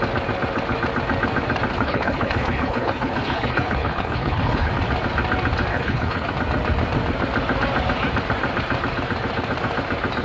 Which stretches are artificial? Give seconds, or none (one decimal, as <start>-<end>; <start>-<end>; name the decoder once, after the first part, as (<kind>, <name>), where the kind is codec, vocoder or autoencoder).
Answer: 1.7-4.7 (codec, HILCodec); 5.7-6.3